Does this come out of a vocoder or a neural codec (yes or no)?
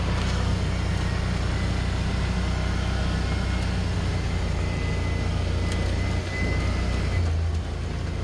no